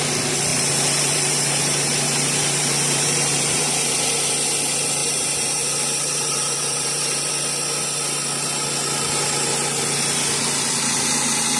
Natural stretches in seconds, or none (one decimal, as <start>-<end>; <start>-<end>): 0.0-0.5; 4.0-5.0; 7.3-11.6